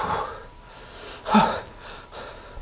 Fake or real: real